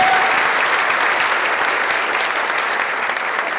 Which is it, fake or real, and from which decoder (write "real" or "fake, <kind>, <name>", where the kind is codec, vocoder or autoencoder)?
real